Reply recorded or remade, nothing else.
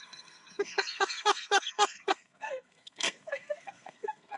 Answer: remade